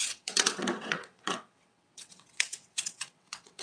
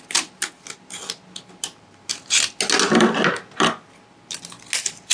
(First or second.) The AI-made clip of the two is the first